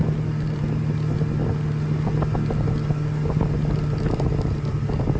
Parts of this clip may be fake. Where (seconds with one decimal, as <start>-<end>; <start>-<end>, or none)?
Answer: none